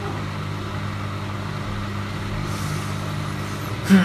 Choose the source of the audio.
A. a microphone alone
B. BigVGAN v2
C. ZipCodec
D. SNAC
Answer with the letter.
A